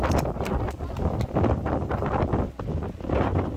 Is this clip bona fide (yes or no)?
yes